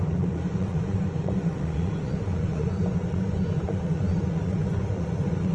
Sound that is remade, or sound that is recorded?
remade